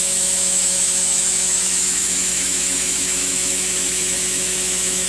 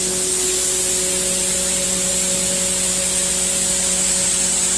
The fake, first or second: first